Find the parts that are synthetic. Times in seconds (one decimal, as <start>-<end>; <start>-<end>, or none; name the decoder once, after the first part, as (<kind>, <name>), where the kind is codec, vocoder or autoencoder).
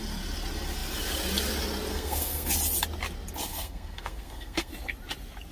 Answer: 1.9-2.5 (codec, SNAC); 3.5-4.7